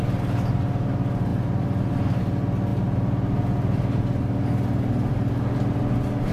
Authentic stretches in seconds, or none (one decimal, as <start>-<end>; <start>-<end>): 0.0-6.3